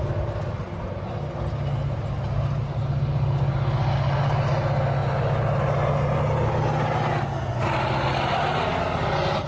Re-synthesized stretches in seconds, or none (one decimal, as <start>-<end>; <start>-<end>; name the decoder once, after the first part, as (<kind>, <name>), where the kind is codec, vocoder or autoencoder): none